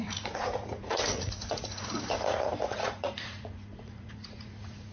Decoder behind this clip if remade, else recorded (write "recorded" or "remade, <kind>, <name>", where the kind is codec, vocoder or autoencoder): remade, vocoder, Vocos